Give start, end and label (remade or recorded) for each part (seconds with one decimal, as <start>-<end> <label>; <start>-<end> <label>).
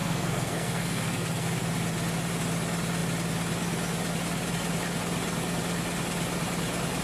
0.0-1.6 remade; 1.6-7.0 recorded